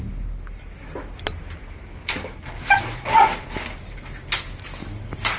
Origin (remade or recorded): recorded